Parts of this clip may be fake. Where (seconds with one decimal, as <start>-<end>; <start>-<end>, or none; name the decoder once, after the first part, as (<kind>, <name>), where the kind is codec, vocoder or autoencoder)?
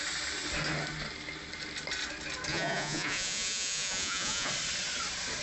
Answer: 2.5-4.5 (vocoder, Vocos)